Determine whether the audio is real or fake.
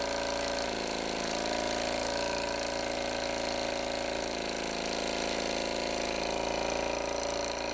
real